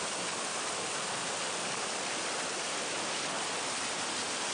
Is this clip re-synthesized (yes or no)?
no